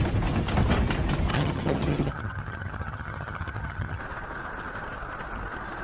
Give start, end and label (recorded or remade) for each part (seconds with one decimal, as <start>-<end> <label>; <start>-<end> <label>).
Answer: 0.0-1.3 recorded; 1.3-4.0 remade; 4.0-5.8 recorded